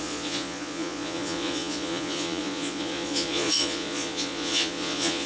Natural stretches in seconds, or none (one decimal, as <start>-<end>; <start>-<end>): none